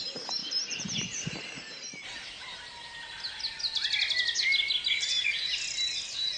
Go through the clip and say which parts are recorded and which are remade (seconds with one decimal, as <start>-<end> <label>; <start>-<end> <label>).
0.0-6.4 recorded